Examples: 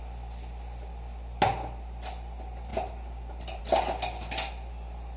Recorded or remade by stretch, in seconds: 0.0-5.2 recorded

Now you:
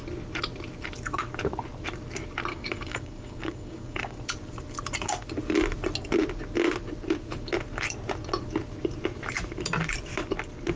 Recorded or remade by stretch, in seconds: 0.0-2.5 recorded; 2.5-4.2 remade; 4.2-10.8 recorded

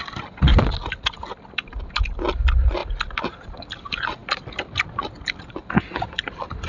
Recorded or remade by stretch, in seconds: 0.0-6.7 recorded

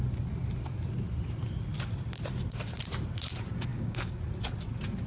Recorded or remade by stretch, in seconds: 0.0-3.7 recorded; 3.7-4.2 remade; 4.2-5.1 recorded

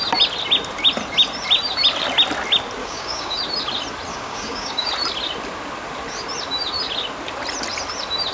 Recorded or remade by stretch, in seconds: 0.0-2.8 recorded; 2.8-3.4 remade; 3.4-4.1 recorded; 4.1-4.9 remade; 4.9-8.3 recorded

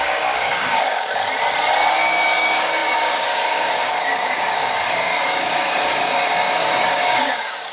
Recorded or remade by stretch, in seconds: 0.0-1.2 remade; 1.2-1.9 recorded; 1.9-7.7 remade

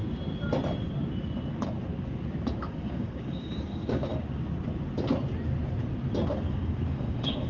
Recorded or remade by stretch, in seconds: 0.0-2.6 recorded; 2.6-4.1 remade; 4.1-6.5 recorded; 6.5-7.5 remade